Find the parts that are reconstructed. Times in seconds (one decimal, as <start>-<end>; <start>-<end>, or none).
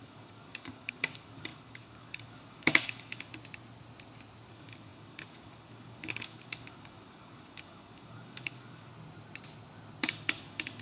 0.0-3.3; 4.5-8.9; 10.0-10.8